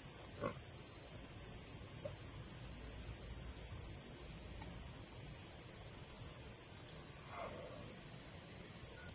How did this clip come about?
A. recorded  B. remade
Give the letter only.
A